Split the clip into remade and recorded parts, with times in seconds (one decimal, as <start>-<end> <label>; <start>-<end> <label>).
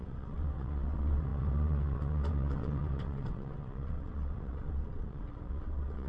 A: 0.0-6.1 remade